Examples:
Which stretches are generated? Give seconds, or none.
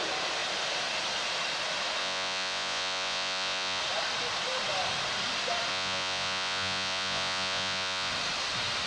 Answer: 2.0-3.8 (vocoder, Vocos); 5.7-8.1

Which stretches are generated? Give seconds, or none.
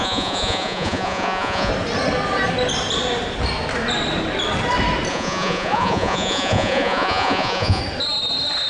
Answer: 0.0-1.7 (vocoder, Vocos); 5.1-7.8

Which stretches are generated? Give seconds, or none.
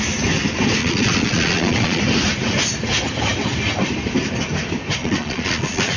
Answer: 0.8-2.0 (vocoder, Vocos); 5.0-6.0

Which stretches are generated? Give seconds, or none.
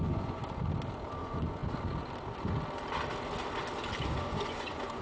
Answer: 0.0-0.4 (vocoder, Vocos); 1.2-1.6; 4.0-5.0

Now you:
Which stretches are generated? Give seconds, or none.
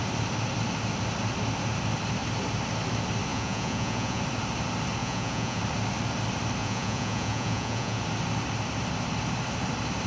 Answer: 3.3-4.2 (vocoder, Vocos); 5.0-5.6; 6.6-8.0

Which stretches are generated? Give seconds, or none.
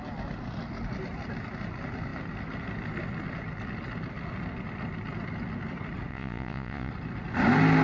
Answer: 6.1-6.9 (vocoder, Vocos)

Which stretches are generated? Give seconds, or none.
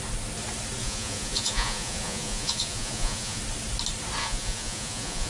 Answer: 0.8-3.4 (vocoder, Vocos); 4.2-5.3